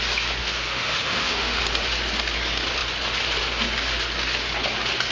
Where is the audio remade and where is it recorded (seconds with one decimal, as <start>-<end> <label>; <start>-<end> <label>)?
0.0-0.4 recorded; 0.4-1.6 remade; 1.6-5.1 recorded